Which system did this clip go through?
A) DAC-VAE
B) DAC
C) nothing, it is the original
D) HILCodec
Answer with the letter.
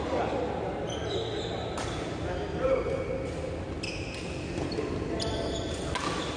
C